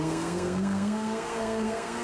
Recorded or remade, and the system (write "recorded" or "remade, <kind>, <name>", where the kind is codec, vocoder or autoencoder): remade, codec, SNAC